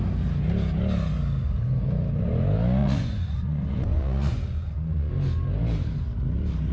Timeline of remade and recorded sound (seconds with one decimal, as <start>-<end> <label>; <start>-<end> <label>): 0.0-2.8 recorded; 2.8-5.1 remade; 5.1-6.7 recorded